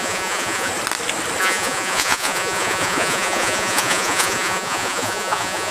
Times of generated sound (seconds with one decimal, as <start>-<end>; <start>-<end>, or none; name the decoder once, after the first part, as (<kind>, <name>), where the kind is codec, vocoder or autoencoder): 0.0-0.7 (vocoder, Vocos); 1.4-5.7